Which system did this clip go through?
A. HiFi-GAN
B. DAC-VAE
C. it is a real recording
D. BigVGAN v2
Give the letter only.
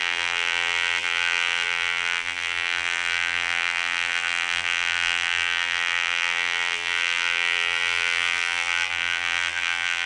D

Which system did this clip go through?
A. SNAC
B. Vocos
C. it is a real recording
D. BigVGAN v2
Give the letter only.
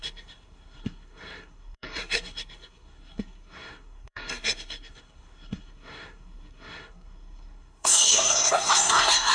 A